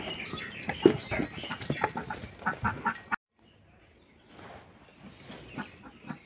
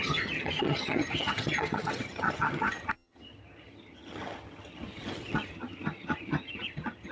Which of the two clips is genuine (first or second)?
first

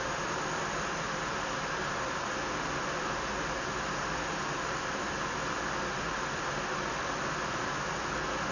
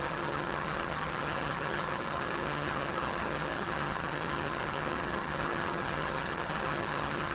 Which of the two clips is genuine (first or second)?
first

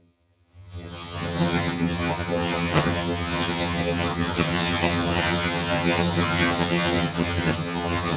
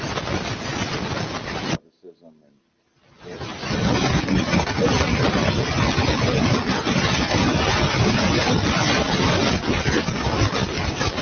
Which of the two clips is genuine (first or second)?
second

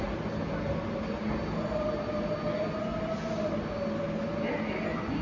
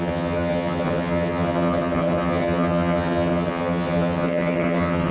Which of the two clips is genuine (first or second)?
first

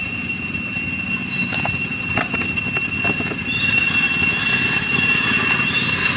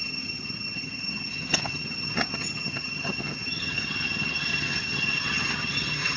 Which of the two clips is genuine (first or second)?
first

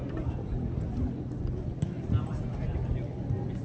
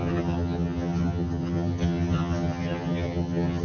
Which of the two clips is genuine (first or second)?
first